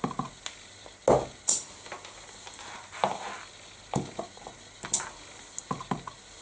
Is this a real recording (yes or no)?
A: yes